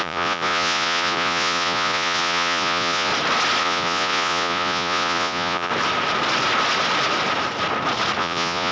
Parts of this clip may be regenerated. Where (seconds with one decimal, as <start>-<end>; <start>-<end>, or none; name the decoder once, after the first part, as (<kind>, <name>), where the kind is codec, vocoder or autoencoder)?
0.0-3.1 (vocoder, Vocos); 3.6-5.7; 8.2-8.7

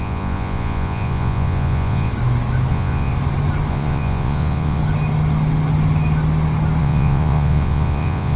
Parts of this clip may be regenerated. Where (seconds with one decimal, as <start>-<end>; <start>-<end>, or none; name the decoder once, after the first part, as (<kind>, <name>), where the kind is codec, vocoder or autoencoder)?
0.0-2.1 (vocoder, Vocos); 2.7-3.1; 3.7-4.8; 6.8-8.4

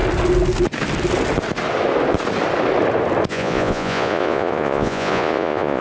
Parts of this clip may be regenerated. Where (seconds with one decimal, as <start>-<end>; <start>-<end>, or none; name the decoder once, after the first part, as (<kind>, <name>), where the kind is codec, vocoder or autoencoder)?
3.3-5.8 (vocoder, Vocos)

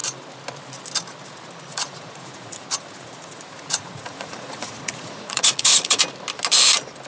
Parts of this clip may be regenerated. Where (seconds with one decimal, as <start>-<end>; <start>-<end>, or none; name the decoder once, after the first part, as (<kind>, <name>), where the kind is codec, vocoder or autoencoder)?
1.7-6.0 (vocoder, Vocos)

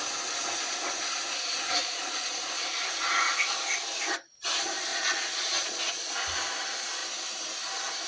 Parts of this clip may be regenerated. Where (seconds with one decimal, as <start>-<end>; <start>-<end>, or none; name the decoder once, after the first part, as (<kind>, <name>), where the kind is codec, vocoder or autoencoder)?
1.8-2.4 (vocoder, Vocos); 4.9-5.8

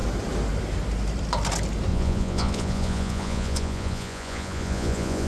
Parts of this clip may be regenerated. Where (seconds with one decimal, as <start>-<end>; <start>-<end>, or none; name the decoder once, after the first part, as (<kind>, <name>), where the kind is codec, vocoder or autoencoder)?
1.9-5.3 (vocoder, Vocos)